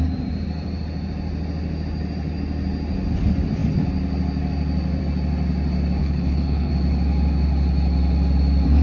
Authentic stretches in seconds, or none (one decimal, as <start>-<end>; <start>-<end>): 0.0-6.0; 6.7-8.8